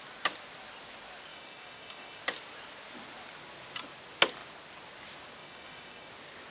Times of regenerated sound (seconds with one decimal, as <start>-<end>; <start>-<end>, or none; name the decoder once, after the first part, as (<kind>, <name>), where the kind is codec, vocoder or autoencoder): 1.3-2.2 (codec, DAC); 5.4-6.1